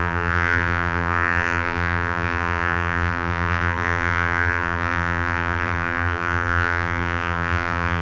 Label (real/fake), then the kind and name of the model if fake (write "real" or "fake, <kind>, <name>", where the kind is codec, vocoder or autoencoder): fake, vocoder, BigVGAN v2